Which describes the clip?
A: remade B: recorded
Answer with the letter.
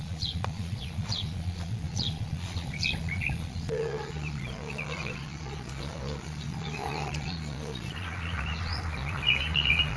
A